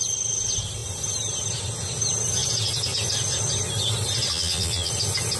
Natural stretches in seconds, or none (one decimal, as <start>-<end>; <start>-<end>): 0.0-4.3; 4.9-5.4